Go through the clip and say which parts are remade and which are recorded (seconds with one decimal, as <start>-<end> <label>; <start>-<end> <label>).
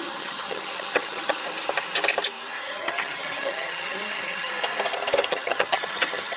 0.0-1.4 remade; 1.4-2.6 recorded; 2.6-4.5 remade; 4.5-5.3 recorded; 5.3-6.4 remade